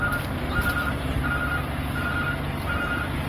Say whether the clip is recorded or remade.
recorded